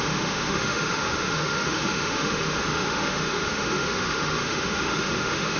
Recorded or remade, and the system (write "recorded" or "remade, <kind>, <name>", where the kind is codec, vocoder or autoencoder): remade, autoencoder, DAC-VAE